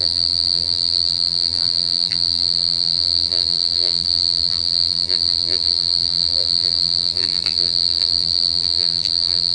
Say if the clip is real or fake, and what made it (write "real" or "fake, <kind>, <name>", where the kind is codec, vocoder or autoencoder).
fake, vocoder, BigVGAN v2